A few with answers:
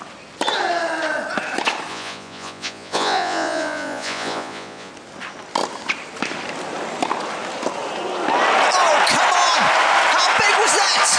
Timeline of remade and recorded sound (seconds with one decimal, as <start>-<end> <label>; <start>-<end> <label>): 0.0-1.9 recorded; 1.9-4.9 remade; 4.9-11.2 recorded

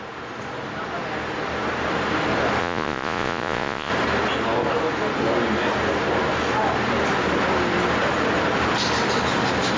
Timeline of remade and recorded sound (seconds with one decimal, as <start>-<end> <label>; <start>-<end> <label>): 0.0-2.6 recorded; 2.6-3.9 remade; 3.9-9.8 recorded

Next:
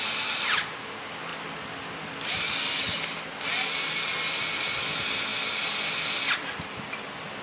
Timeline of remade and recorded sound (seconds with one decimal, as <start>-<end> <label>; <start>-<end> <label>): 0.0-7.4 recorded